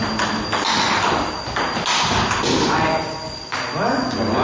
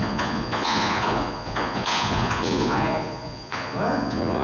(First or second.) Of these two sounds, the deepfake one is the second